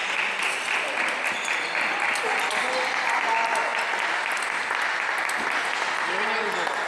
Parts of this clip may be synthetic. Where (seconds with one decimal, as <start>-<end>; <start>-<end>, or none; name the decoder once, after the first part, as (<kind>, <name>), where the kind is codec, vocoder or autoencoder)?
none

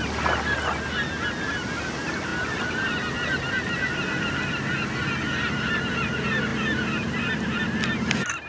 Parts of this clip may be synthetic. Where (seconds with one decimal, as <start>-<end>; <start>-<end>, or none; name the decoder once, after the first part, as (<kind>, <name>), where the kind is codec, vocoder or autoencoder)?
none

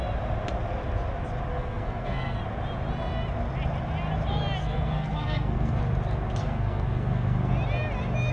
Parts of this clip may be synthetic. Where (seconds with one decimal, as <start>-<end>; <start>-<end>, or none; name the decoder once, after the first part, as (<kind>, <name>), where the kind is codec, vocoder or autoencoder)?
1.5-2.4 (codec, SNAC); 4.6-5.8; 6.4-7.5